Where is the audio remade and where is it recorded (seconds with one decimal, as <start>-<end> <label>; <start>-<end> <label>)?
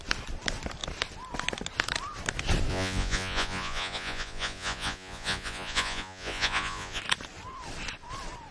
0.0-2.7 recorded; 2.7-7.0 remade; 7.0-8.5 recorded